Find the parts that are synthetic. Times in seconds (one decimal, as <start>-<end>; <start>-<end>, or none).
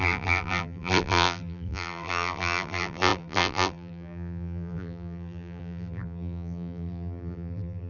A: 0.0-7.9